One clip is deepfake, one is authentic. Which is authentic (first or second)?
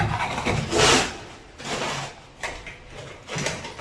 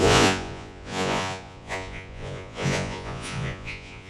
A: first